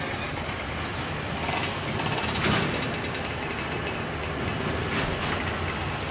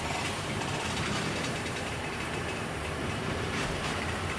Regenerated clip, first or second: second